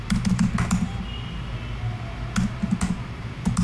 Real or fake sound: real